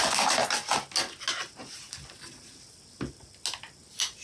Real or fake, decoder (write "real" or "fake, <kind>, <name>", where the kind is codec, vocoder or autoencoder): real